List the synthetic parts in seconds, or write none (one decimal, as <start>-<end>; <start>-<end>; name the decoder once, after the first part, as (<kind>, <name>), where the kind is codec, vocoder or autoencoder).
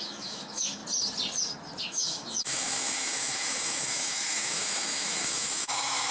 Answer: 0.0-0.8 (autoencoder, DAC-VAE); 1.8-6.1